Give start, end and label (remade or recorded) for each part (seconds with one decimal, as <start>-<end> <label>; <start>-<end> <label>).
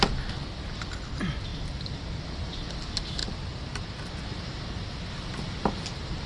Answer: 0.0-1.5 recorded; 1.5-2.7 remade; 2.7-6.3 recorded